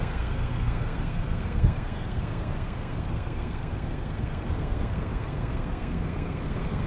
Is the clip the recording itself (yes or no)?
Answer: no